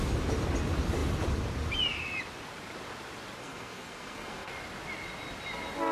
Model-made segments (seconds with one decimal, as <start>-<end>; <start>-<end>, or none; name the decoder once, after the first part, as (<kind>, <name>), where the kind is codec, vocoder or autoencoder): 3.4-4.5 (codec, SNAC)